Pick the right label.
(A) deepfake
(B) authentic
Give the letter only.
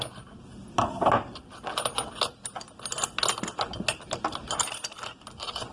B